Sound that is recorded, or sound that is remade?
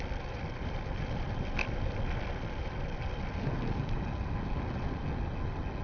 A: recorded